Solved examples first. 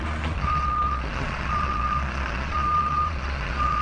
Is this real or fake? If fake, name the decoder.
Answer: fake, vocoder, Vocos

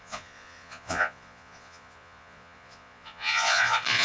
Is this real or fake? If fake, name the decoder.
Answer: fake, vocoder, Vocos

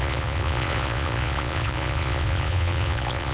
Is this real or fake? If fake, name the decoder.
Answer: fake, vocoder, Vocos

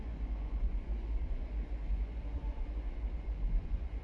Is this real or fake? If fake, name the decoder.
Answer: fake, vocoder, Vocos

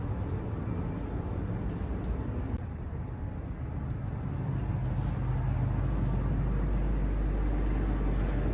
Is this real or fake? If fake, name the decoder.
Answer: real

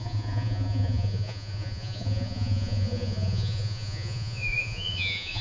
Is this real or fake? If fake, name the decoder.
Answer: fake, vocoder, Vocos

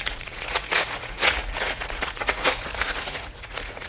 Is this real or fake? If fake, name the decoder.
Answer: fake, vocoder, Vocos